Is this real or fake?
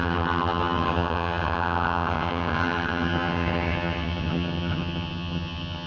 fake